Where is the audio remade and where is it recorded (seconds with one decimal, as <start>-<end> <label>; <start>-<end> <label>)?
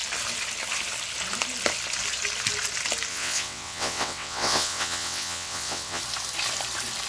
0.0-3.1 recorded; 3.1-6.0 remade; 6.0-7.1 recorded